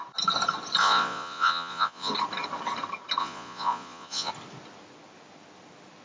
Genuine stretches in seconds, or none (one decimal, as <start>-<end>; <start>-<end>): 0.0-0.8; 2.1-3.2; 4.3-6.0